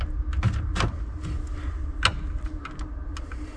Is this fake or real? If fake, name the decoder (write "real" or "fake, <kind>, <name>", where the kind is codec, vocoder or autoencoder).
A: real